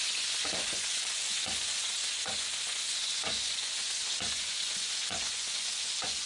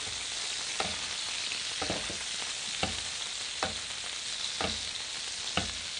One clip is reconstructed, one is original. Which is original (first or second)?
second